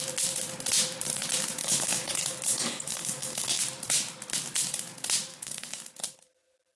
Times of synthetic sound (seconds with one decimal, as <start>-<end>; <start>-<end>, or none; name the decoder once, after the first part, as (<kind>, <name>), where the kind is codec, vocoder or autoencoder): 1.6-3.6 (codec, DAC); 5.3-5.8